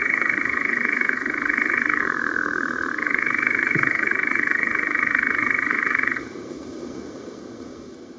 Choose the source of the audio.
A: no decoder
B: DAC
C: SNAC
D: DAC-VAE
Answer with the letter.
C